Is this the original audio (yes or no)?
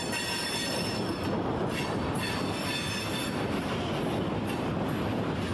yes